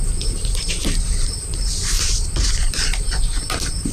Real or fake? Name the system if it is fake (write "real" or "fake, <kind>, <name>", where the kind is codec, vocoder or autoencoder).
real